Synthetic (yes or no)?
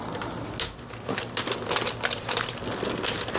no